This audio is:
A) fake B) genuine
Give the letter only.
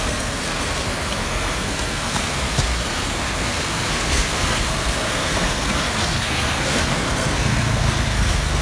A